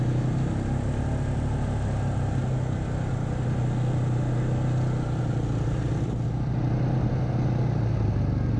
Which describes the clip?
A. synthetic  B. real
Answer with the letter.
B